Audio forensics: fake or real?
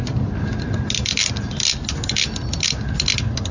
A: real